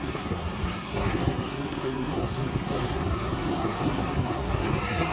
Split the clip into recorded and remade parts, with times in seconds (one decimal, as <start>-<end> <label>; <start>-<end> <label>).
0.0-5.1 remade